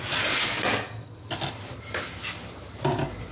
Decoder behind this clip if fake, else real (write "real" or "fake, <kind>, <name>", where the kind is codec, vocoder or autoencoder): real